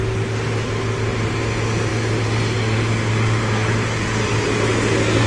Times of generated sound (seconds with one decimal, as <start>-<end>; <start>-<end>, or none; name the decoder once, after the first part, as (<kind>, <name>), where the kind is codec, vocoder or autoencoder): none